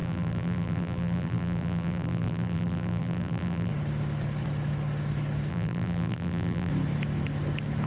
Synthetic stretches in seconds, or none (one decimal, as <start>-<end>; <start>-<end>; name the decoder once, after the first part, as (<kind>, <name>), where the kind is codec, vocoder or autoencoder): 0.0-3.7 (vocoder, BigVGAN v2); 5.5-6.7